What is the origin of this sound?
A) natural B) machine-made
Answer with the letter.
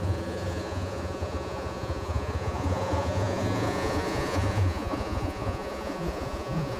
B